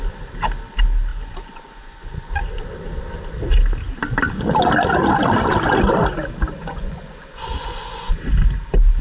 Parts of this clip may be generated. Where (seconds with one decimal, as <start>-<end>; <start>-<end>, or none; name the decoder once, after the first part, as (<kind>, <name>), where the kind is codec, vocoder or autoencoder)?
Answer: 1.1-2.3 (vocoder, Vocos); 6.6-8.1